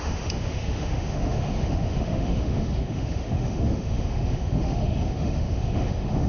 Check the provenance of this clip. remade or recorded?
remade